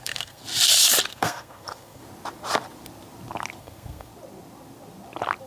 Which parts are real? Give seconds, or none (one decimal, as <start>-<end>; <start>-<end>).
0.4-1.1; 2.0-3.6; 4.1-5.5